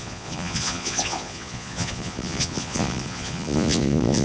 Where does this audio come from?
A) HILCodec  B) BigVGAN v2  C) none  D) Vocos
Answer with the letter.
D